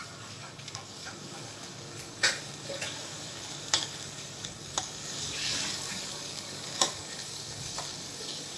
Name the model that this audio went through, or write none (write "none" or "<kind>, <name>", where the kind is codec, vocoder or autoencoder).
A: codec, DAC